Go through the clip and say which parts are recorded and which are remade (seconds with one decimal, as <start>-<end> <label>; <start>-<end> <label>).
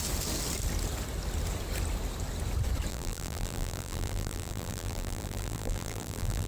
0.0-2.9 recorded; 2.9-6.5 remade